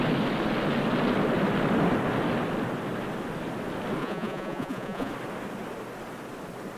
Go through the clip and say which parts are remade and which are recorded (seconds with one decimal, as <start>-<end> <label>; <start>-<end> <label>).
0.0-4.0 recorded; 4.0-5.1 remade; 5.1-6.8 recorded